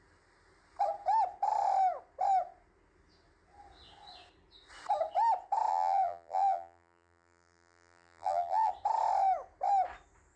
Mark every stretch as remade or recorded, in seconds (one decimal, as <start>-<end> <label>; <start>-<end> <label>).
0.0-5.7 recorded; 5.7-8.7 remade; 8.7-10.4 recorded